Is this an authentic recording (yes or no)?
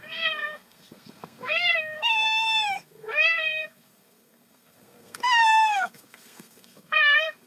no